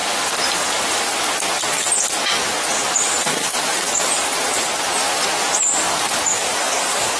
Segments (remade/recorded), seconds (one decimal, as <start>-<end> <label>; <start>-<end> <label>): 0.0-6.3 recorded; 6.3-7.2 remade